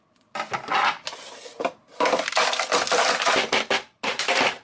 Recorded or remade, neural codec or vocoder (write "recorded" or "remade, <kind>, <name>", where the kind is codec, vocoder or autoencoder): remade, vocoder, BigVGAN v2